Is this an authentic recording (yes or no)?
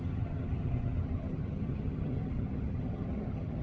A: no